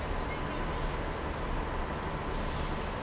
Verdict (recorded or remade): recorded